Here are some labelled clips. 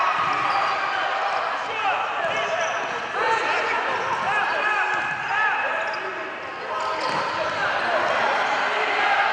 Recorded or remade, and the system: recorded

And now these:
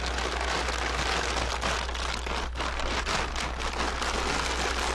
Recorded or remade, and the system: recorded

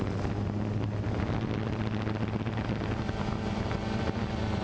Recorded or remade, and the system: recorded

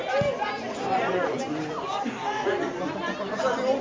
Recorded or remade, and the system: recorded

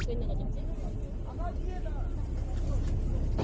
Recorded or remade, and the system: recorded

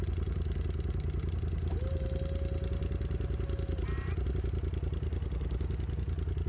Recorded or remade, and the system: recorded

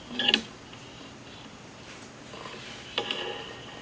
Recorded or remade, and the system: recorded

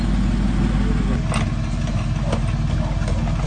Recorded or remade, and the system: recorded